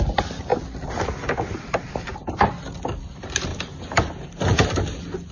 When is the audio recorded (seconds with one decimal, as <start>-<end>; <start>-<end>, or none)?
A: 0.0-0.5; 2.6-5.3